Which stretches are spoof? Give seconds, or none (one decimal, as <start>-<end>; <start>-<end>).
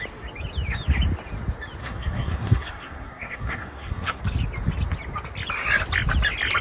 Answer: 1.8-4.2